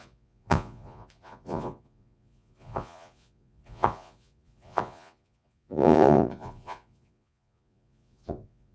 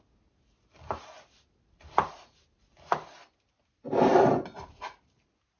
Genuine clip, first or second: second